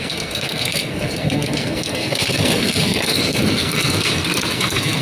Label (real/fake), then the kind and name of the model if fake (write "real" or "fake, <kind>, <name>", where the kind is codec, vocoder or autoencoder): fake, codec, SNAC